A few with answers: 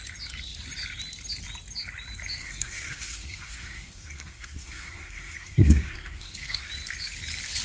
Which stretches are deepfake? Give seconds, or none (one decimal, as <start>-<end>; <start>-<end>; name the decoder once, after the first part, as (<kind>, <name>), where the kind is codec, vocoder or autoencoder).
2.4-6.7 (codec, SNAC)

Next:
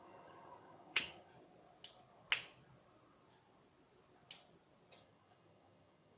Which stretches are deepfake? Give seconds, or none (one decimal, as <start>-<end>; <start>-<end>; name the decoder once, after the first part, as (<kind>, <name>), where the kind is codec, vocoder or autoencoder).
0.0-1.3 (vocoder, HiFi-GAN); 4.9-6.2

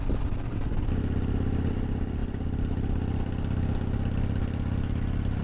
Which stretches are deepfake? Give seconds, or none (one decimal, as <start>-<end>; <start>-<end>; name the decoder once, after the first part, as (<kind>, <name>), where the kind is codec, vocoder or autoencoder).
none

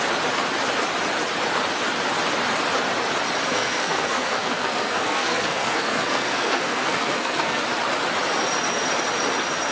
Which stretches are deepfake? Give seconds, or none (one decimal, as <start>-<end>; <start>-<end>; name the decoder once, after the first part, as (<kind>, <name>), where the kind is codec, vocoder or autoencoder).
3.5-7.6 (codec, SNAC)

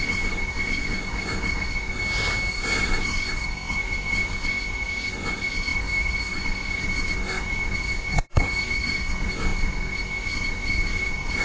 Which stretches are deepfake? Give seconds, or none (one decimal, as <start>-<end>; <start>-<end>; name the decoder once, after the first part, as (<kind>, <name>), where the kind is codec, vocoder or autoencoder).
0.0-2.0 (codec, SNAC); 2.5-11.4

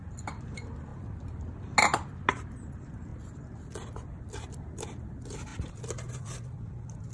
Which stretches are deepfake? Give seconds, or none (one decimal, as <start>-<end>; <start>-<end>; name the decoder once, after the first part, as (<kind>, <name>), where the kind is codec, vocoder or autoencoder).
none

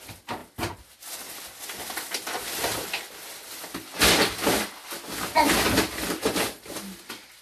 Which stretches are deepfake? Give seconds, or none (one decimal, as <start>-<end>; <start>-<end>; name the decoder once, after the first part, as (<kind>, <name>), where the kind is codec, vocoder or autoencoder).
none

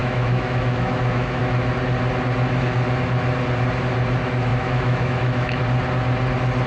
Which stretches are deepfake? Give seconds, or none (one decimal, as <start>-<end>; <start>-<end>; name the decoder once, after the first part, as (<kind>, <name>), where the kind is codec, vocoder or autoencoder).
0.0-1.4 (autoencoder, DAC-VAE); 4.5-5.6